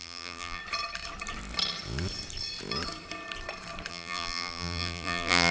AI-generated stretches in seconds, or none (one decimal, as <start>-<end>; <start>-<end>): 0.0-0.6; 3.9-5.5